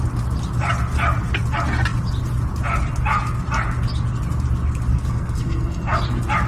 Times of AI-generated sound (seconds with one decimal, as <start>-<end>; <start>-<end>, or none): 4.9-6.0